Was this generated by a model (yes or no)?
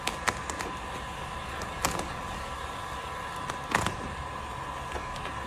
no